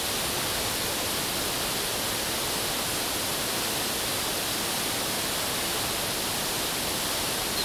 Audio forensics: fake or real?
real